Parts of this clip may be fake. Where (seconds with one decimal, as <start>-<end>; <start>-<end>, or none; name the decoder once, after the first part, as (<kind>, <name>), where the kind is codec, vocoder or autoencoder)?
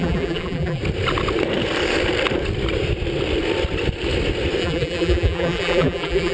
0.0-0.8 (vocoder, BigVGAN v2); 4.6-6.3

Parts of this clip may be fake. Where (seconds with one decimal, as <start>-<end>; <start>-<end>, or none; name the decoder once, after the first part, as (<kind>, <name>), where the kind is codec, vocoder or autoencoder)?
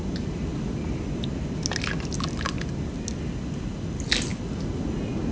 none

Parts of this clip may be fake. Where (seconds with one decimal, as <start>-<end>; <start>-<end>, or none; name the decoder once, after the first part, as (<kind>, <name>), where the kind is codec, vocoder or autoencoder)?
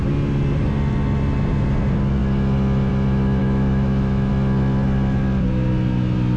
3.4-4.3 (autoencoder, DAC-VAE)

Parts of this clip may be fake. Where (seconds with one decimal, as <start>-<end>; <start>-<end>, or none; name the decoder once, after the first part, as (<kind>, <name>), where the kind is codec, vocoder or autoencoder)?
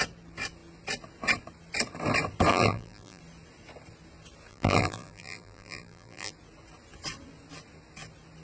2.5-3.2 (vocoder, BigVGAN v2); 4.5-6.3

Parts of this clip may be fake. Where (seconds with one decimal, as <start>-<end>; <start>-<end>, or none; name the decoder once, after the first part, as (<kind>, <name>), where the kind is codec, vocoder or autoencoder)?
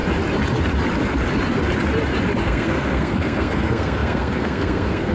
2.4-5.1 (codec, SNAC)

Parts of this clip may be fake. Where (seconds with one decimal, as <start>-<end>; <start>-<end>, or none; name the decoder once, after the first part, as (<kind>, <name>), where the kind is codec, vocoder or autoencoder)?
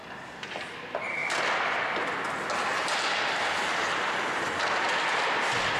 none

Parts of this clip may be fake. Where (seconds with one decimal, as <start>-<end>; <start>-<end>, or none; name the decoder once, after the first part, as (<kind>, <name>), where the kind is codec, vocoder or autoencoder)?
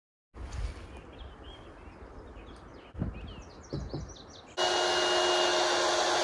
none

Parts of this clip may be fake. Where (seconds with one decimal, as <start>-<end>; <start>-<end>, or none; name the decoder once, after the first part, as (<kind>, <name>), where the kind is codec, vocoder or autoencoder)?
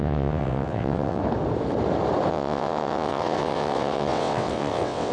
0.0-1.2 (vocoder, WaveNeXt); 2.3-5.1